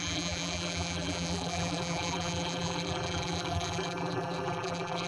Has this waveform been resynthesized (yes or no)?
yes